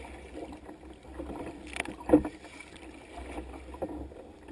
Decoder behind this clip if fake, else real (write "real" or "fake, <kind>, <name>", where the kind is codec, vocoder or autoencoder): real